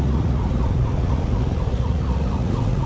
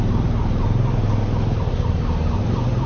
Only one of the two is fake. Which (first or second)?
first